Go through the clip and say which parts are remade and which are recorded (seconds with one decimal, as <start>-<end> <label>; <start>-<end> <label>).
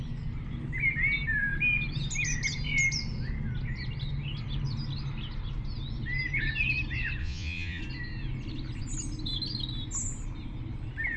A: 0.0-7.2 recorded; 7.2-7.8 remade; 7.8-11.2 recorded